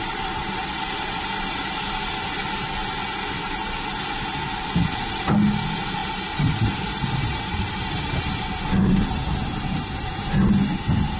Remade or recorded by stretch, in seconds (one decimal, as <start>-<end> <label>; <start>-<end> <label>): 0.0-6.0 recorded; 6.0-8.2 remade; 8.2-11.2 recorded